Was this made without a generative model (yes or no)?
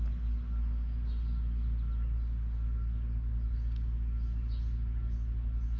yes